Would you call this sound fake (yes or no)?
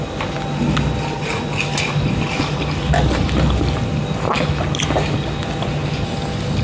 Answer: no